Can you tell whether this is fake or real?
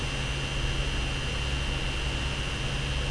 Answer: real